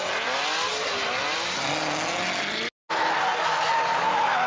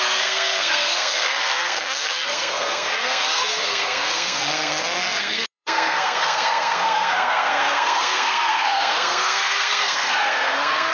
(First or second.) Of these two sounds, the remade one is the second